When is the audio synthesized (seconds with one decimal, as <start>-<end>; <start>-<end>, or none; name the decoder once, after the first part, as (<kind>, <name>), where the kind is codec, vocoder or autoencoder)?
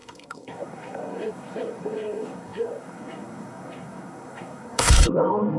0.0-5.6 (codec, SNAC)